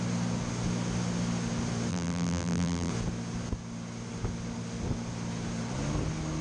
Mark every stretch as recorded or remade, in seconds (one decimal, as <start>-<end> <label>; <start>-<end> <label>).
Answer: 0.0-1.9 recorded; 1.9-2.9 remade; 2.9-6.4 recorded